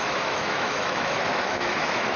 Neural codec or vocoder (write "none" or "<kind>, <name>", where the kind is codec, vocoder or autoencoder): autoencoder, DAC-VAE